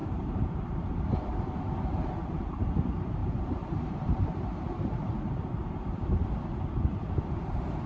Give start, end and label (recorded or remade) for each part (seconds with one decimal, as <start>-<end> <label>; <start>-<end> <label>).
0.0-0.8 remade; 0.8-3.2 recorded; 3.2-7.9 remade